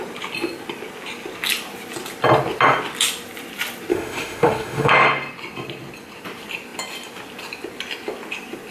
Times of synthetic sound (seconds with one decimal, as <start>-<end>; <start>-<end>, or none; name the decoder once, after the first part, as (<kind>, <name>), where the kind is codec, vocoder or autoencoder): 3.9-4.9 (autoencoder, DAC-VAE)